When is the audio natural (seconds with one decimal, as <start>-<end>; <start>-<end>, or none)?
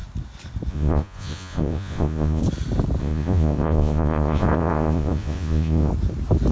0.0-0.7; 2.4-3.0; 5.9-6.5